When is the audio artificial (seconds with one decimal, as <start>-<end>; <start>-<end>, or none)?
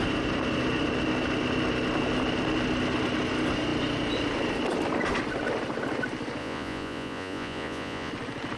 6.4-8.1